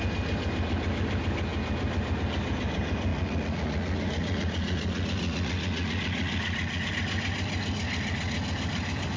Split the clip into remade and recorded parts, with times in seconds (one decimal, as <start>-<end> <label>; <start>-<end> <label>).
0.0-3.1 recorded; 3.1-6.9 remade; 6.9-9.2 recorded